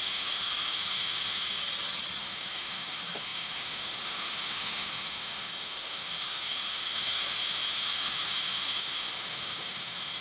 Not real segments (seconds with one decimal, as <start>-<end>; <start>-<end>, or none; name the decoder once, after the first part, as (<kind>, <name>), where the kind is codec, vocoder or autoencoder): 0.0-1.6 (autoencoder, DAC-VAE); 2.2-10.2